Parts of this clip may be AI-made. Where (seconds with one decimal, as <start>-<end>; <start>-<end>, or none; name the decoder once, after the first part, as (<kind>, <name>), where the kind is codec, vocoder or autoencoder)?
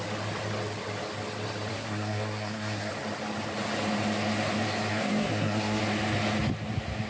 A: 1.7-2.9 (codec, SNAC); 4.9-5.8